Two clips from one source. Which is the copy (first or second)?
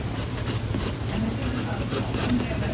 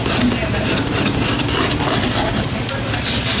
second